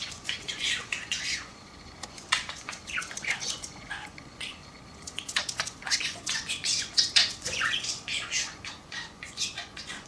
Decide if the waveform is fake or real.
fake